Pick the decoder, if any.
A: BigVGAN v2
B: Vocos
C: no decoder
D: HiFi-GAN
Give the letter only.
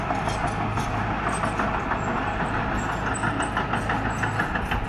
C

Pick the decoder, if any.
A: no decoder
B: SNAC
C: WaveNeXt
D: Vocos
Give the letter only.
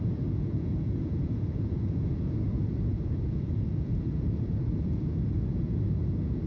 D